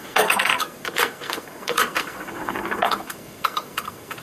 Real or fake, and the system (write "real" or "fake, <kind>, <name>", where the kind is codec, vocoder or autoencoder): fake, codec, SNAC